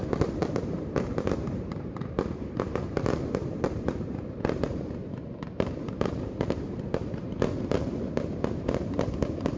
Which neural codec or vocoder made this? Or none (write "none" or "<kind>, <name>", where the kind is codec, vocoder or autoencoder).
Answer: vocoder, BigVGAN v2